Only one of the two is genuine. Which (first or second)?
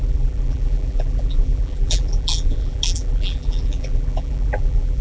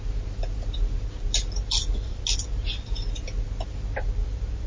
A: second